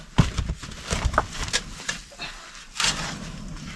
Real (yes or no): yes